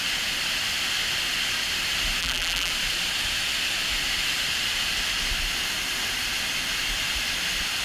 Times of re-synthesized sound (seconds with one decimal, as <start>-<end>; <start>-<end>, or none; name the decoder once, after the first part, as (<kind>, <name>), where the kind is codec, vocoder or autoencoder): 2.2-2.7 (vocoder, BigVGAN v2)